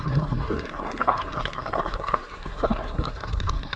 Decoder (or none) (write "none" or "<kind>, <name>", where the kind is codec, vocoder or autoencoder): codec, SNAC